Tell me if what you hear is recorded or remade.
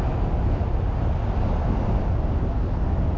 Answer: recorded